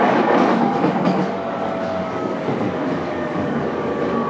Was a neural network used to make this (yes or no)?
yes